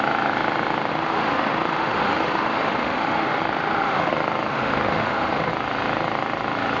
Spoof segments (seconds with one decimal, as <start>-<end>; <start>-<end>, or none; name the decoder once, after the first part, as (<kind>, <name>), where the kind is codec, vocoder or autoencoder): 0.9-4.1 (autoencoder, DAC-VAE); 4.5-5.5